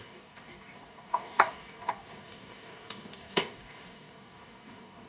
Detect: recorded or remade remade